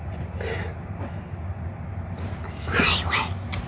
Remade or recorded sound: recorded